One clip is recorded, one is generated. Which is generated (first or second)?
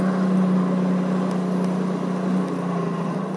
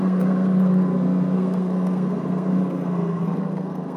second